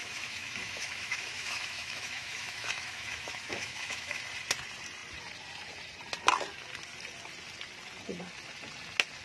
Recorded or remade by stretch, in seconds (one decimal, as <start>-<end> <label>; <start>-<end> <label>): 0.0-4.2 remade; 4.2-9.2 recorded